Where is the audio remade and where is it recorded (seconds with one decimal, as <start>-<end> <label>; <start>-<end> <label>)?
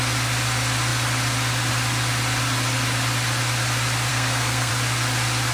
0.0-4.1 recorded; 4.1-4.7 remade; 4.7-5.5 recorded